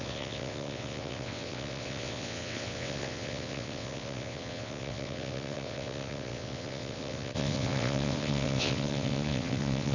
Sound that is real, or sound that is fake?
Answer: fake